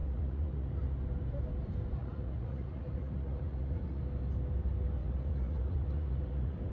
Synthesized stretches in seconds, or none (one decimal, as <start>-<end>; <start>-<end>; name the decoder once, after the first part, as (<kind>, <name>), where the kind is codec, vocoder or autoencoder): 0.0-0.7 (vocoder, Vocos); 2.0-4.0; 5.0-6.7